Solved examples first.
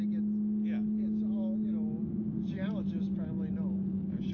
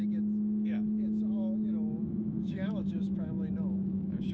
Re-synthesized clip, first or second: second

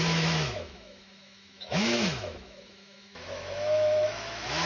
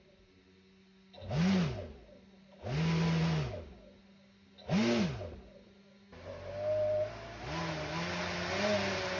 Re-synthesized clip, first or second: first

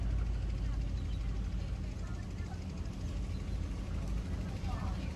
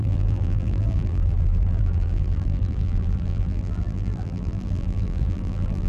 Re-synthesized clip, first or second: second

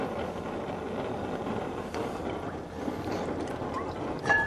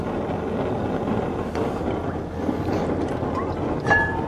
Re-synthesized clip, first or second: first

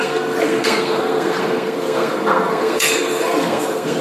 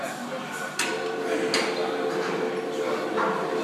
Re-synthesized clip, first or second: first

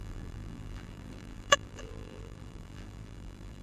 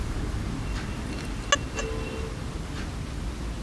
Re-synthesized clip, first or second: first